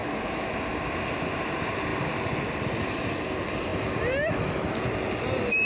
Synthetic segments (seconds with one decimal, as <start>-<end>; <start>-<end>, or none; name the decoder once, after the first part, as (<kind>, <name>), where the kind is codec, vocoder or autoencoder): 0.0-0.5 (autoencoder, DAC-VAE)